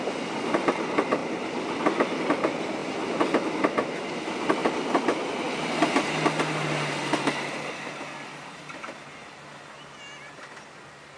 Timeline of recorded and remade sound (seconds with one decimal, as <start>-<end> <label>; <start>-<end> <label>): 0.0-11.2 recorded